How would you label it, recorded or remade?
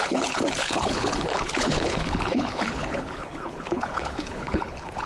remade